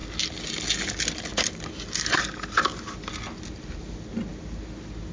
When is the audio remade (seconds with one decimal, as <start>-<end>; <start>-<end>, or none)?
none